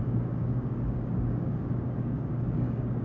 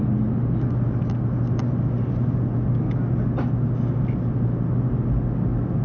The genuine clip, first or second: second